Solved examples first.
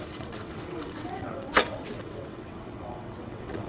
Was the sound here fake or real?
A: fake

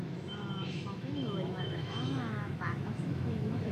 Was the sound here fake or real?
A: fake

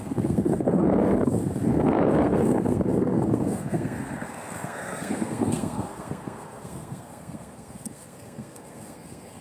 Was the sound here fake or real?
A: fake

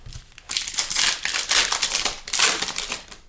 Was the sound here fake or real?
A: real